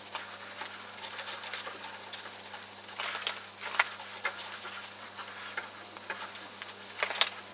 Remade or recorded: recorded